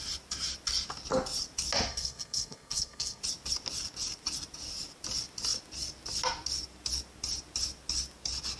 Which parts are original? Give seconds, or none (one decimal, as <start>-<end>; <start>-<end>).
0.0-1.9; 3.2-8.6